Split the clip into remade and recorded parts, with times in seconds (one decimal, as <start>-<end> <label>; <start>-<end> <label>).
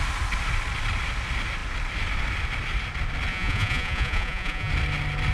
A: 0.0-3.3 recorded; 3.3-4.7 remade; 4.7-5.3 recorded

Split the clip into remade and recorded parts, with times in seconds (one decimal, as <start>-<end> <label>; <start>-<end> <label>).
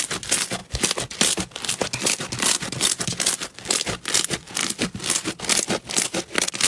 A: 0.0-6.7 recorded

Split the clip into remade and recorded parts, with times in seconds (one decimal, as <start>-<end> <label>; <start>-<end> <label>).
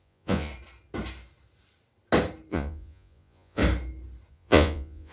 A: 0.0-0.5 remade; 0.5-2.5 recorded; 2.5-3.6 remade; 3.6-4.3 recorded; 4.3-5.1 remade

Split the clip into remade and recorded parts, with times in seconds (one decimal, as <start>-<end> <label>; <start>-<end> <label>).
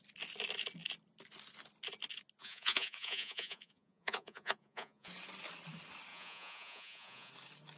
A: 0.0-2.4 recorded; 2.4-5.1 remade; 5.1-6.1 recorded; 6.1-7.3 remade; 7.3-7.8 recorded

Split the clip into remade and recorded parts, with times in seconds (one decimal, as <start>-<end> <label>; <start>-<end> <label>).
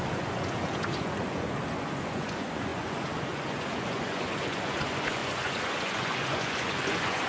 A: 0.0-7.3 remade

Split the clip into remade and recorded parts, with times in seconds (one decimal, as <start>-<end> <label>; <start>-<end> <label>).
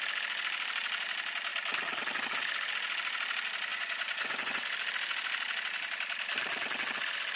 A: 0.0-3.7 recorded; 3.7-4.6 remade; 4.6-7.4 recorded